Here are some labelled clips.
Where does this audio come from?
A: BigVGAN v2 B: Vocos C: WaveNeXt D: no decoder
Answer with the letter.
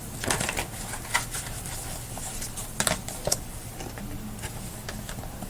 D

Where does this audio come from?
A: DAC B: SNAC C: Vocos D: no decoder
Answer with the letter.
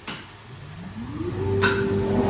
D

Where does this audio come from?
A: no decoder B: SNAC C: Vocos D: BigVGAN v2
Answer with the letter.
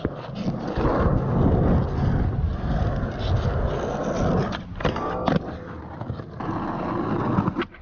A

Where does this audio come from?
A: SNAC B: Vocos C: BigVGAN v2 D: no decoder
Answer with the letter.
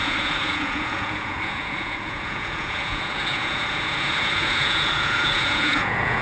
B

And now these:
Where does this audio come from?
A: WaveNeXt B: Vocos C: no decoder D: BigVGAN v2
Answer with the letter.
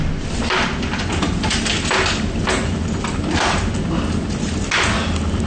C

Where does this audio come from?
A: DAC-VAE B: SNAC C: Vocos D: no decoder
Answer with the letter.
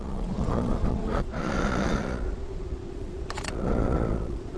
C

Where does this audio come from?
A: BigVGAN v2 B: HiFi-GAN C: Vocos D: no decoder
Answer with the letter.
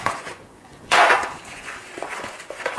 C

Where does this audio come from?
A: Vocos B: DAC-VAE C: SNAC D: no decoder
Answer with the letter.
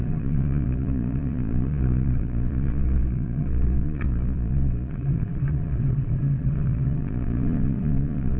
A